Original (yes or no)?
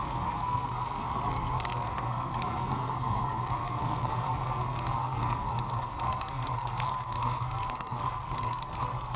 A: no